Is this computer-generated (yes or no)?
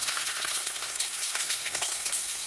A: yes